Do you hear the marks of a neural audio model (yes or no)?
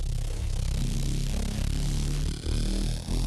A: no